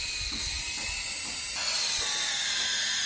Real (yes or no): yes